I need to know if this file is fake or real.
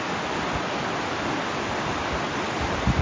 real